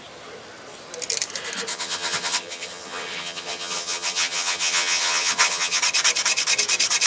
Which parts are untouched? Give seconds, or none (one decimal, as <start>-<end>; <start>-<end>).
0.0-1.7; 5.8-7.1